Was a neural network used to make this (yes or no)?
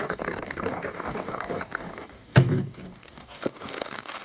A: yes